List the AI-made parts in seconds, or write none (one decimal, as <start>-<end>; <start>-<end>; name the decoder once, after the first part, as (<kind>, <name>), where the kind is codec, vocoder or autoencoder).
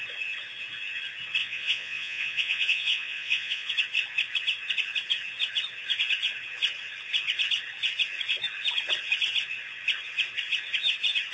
1.4-3.7 (vocoder, Vocos)